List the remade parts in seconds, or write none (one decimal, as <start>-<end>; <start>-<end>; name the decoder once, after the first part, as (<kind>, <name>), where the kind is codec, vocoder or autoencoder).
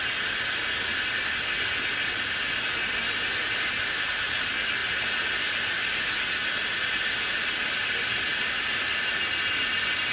8.3-9.3 (vocoder, BigVGAN v2)